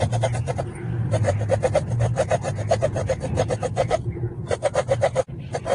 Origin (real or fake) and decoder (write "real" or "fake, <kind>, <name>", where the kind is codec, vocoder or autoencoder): fake, vocoder, BigVGAN v2